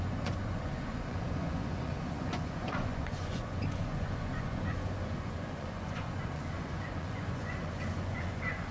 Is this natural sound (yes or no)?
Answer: no